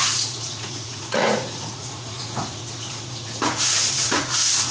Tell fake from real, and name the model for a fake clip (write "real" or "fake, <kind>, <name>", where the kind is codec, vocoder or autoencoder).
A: fake, vocoder, Vocos